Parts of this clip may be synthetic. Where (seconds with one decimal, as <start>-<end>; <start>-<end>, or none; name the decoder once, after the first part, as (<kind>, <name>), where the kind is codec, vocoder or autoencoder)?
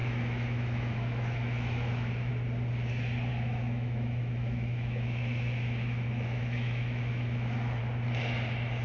0.0-2.3 (autoencoder, DAC-VAE); 3.3-7.8